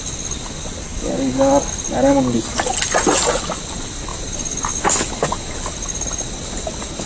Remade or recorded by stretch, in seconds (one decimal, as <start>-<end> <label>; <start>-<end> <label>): 0.0-7.1 recorded